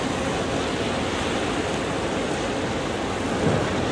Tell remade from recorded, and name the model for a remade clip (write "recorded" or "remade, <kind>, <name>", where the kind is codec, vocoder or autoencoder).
recorded